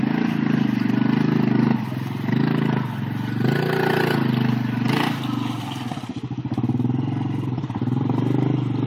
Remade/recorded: recorded